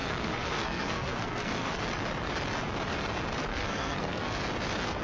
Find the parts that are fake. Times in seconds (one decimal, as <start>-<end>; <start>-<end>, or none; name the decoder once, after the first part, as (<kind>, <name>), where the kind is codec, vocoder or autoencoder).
0.0-1.8 (codec, SNAC); 3.5-4.4